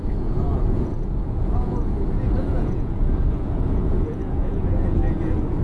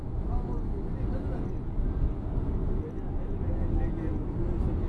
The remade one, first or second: first